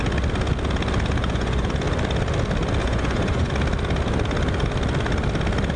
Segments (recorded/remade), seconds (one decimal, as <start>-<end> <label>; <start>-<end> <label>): 0.0-1.2 recorded; 1.2-1.7 remade; 1.7-2.8 recorded; 2.8-3.5 remade; 3.5-5.8 recorded